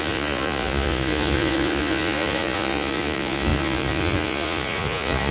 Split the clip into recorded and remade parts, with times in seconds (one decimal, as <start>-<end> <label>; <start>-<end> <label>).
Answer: 0.0-5.3 remade